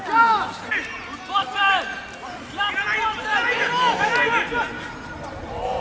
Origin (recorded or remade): recorded